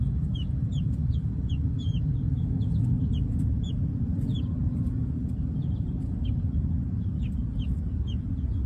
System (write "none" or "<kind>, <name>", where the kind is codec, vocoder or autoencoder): vocoder, Vocos